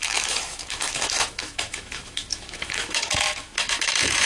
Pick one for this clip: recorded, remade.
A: remade